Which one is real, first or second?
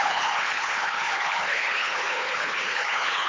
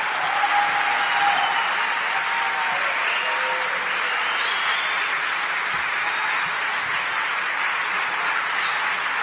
second